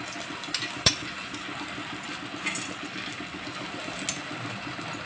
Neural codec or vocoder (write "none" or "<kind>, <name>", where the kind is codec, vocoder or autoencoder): none